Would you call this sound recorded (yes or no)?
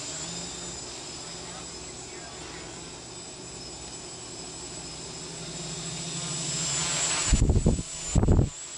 yes